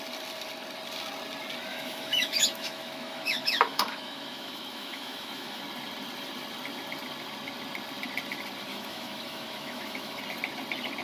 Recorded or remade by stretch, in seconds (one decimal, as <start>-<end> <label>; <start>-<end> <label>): 0.0-1.7 recorded; 1.7-5.6 remade; 5.6-8.7 recorded; 8.7-10.2 remade; 10.2-11.0 recorded